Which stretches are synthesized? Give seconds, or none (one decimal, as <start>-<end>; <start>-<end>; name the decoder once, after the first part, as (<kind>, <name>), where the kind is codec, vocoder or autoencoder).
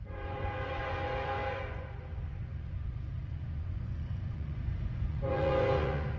0.0-6.2 (vocoder, Vocos)